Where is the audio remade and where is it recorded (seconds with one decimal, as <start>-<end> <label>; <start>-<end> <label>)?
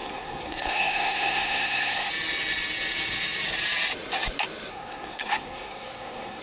0.0-2.1 remade; 2.1-4.7 recorded; 4.7-6.4 remade